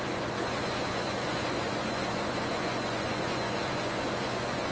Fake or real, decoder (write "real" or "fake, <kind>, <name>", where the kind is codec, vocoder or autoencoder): fake, vocoder, Vocos